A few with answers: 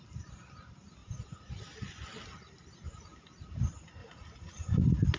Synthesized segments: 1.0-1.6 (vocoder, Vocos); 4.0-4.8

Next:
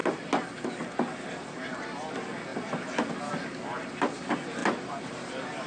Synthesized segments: none

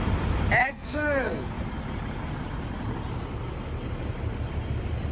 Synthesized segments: 0.6-1.5 (codec, SNAC)

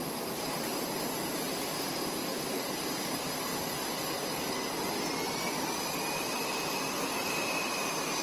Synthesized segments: 0.0-3.5 (vocoder, BigVGAN v2); 7.1-8.2

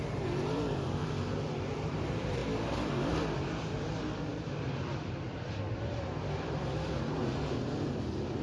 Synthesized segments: 0.0-2.4 (vocoder, BigVGAN v2); 3.7-8.4

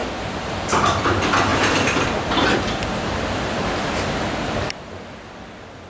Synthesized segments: 0.0-1.0 (vocoder, BigVGAN v2); 1.5-5.0